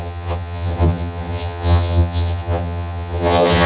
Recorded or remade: remade